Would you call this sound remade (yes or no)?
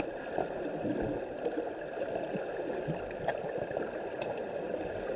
no